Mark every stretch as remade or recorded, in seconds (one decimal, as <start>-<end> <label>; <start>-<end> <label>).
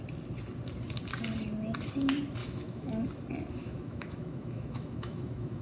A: 0.0-2.4 recorded; 2.4-2.9 remade; 2.9-3.6 recorded; 3.6-5.6 remade